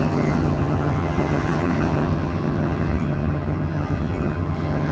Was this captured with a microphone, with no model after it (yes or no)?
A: no